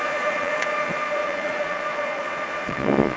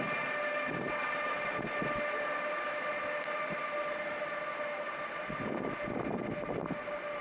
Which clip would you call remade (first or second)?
first